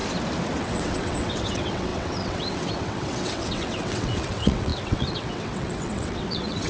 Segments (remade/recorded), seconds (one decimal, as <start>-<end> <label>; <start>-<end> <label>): 0.0-0.6 recorded; 0.6-6.7 remade